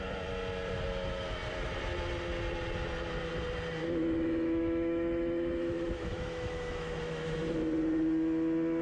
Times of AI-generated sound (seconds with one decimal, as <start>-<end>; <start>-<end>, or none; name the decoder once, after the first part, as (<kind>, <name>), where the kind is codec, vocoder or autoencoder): 3.8-7.6 (autoencoder, DAC-VAE)